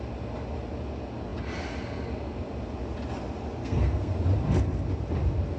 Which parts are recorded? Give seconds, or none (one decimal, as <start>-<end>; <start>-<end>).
0.0-3.6; 4.1-5.6